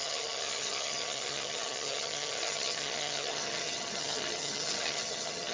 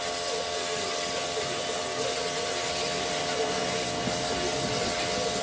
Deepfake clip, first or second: first